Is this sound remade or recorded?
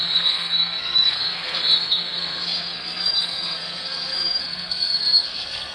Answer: remade